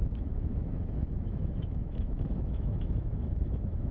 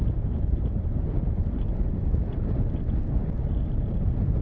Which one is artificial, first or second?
first